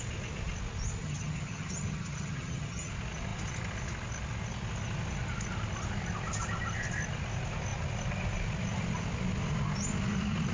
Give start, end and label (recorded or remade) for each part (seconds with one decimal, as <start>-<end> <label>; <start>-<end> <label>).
0.0-1.0 recorded; 1.0-2.9 remade; 2.9-10.5 recorded